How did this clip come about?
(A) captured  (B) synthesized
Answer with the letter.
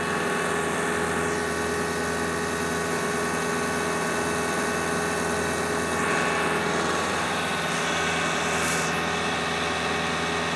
A